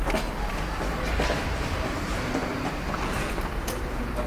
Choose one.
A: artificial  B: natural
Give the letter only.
B